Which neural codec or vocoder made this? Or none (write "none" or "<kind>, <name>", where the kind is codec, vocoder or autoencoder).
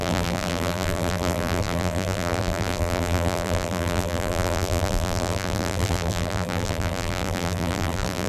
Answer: vocoder, BigVGAN v2